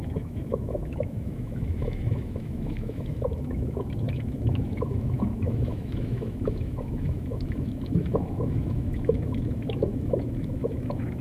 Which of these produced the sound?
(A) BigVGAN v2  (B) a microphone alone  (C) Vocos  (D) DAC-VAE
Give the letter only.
D